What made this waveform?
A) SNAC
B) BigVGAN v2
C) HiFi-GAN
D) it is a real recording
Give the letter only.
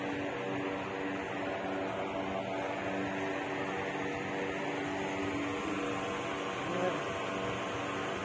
D